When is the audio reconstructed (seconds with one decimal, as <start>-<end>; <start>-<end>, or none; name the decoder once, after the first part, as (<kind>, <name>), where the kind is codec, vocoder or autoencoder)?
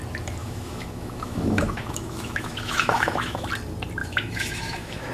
0.4-3.5 (autoencoder, DAC-VAE); 4.0-5.1